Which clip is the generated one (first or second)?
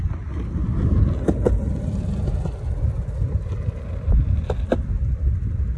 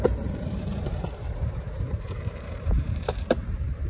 second